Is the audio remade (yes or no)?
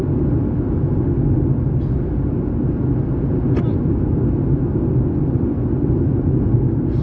no